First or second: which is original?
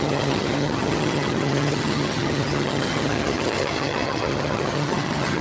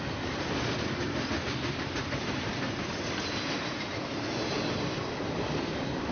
second